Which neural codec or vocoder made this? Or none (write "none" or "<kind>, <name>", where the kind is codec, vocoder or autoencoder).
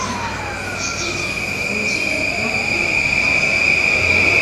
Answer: none